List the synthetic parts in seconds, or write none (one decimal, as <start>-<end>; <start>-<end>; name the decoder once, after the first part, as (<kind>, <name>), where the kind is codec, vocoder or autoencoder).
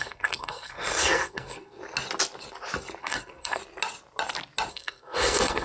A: 0.0-1.8 (codec, SNAC); 3.0-3.6; 4.7-5.6